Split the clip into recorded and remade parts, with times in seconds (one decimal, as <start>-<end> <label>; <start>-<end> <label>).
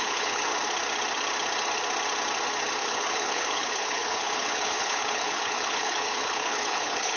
0.0-0.5 remade; 0.5-2.8 recorded; 2.8-7.2 remade